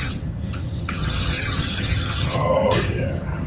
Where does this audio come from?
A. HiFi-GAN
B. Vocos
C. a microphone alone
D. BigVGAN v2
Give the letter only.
A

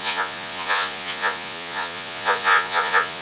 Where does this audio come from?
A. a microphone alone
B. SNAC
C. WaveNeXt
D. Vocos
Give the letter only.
D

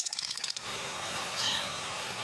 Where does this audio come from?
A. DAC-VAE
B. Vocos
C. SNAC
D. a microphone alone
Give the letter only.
C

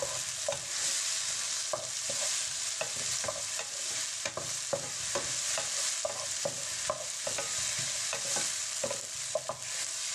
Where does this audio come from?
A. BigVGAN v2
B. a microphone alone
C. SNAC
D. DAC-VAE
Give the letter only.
B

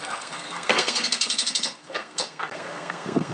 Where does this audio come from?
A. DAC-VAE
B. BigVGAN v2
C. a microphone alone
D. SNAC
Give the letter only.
D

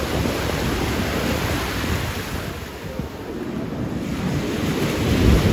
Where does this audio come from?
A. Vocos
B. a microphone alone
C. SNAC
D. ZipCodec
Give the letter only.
B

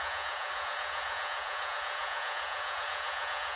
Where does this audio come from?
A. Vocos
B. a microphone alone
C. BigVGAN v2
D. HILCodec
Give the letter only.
A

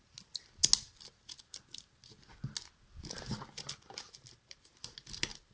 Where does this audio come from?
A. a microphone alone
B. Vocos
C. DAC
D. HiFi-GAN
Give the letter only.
A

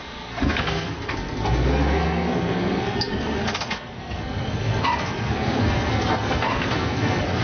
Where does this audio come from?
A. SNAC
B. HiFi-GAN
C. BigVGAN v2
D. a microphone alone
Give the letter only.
A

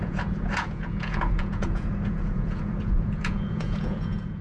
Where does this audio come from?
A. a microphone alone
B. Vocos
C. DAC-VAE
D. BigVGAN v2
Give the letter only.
B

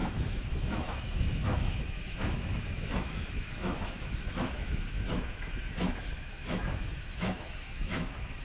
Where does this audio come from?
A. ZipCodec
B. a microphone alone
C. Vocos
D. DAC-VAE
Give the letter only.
D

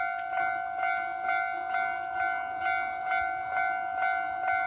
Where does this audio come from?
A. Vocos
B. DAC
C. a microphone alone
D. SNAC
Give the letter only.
C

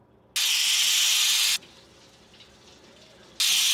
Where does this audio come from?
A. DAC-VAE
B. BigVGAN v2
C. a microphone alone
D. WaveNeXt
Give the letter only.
C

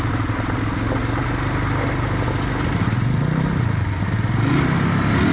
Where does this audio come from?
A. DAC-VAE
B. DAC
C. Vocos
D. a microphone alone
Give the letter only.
D